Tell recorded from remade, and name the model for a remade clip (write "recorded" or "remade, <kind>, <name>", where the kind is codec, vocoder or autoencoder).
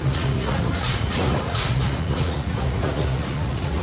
remade, vocoder, Vocos